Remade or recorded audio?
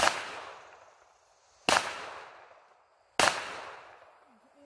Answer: recorded